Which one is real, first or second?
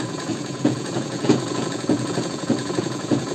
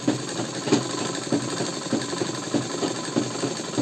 second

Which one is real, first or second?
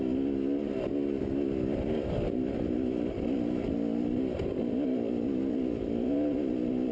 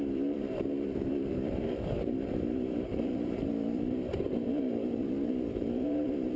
first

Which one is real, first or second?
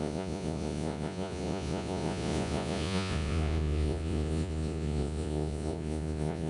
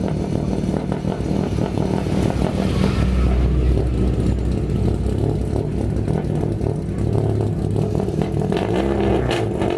second